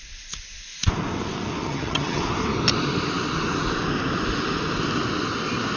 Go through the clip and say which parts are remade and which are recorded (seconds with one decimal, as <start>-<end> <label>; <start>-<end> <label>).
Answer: 0.0-1.6 recorded; 1.6-2.2 remade; 2.2-5.8 recorded